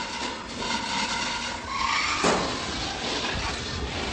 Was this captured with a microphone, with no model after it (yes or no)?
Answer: yes